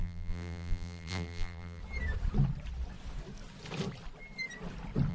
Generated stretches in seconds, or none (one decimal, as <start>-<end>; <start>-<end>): 0.0-1.8